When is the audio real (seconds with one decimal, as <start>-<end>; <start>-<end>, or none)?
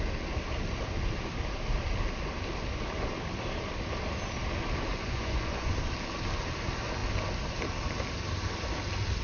0.0-4.9; 5.7-9.2